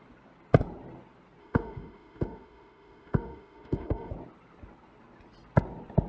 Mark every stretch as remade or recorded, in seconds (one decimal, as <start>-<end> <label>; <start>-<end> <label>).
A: 0.0-1.4 recorded; 1.4-4.1 remade; 4.1-6.1 recorded